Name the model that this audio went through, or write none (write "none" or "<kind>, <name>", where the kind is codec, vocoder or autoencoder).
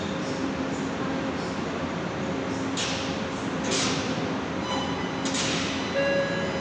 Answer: none